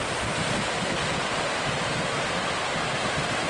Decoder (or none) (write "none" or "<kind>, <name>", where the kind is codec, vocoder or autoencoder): none